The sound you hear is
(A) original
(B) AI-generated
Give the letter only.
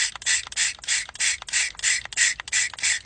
A